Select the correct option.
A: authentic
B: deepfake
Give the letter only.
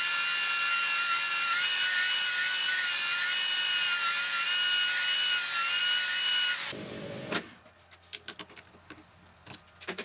A